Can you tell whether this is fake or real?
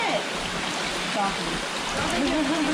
real